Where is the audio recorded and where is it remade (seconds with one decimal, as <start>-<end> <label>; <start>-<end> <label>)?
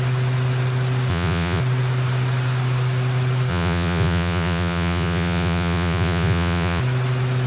0.0-1.1 recorded; 1.1-1.6 remade; 1.6-3.5 recorded; 3.5-6.8 remade; 6.8-7.5 recorded